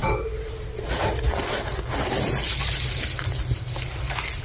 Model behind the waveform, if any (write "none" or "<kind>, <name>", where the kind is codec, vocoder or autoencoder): none